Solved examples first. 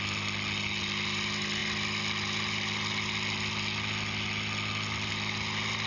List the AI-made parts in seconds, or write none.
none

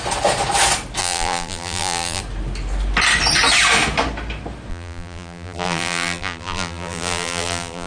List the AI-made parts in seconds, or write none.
1.0-2.2 (vocoder, BigVGAN v2); 4.7-7.9

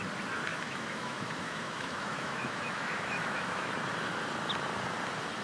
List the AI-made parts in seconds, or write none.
0.5-3.7 (autoencoder, DAC-VAE)

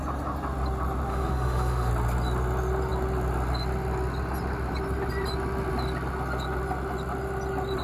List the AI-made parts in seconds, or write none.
1.1-1.9 (autoencoder, DAC-VAE)

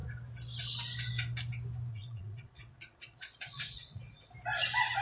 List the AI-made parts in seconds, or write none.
1.9-4.3 (vocoder, Vocos)

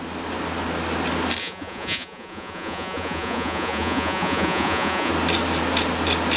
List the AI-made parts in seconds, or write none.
1.4-5.1 (vocoder, Vocos)